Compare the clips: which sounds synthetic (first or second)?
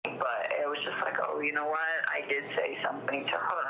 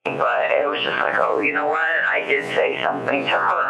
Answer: second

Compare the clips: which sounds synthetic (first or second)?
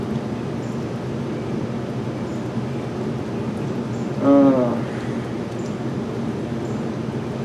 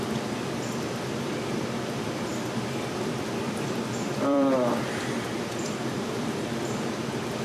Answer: second